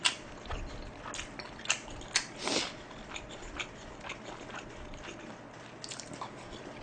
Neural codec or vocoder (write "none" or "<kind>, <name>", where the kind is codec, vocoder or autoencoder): none